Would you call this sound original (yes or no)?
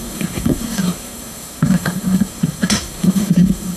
no